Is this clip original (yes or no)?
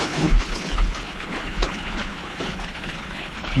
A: no